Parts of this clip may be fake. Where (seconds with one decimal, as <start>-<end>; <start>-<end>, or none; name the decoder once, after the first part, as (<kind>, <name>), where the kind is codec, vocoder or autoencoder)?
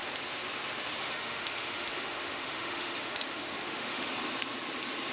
1.0-4.1 (autoencoder, DAC-VAE)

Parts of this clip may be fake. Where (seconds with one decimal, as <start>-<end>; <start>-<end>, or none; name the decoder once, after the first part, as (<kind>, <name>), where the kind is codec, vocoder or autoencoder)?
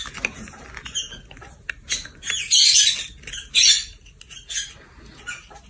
none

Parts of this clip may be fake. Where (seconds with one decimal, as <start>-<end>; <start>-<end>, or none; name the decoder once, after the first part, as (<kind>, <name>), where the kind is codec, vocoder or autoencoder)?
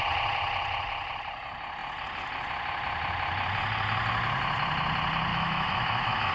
5.3-6.3 (autoencoder, DAC-VAE)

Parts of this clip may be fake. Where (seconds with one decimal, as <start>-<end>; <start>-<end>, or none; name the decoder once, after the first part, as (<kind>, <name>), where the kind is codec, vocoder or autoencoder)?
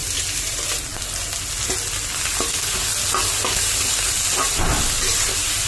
none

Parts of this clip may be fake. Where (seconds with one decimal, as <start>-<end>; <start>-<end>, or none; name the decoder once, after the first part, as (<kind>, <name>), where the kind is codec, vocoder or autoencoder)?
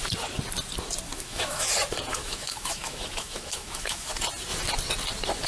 1.1-1.7 (autoencoder, DAC-VAE); 2.1-4.1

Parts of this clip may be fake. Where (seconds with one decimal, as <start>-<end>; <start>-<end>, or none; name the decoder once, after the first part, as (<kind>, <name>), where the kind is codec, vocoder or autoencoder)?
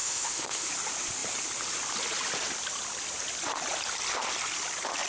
0.0-0.7 (autoencoder, DAC-VAE)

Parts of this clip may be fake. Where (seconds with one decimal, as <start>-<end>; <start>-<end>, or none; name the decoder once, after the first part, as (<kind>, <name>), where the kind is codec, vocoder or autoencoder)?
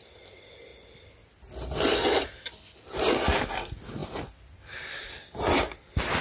none